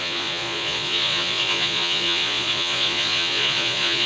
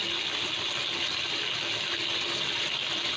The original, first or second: second